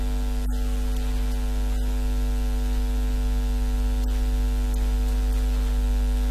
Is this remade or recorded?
recorded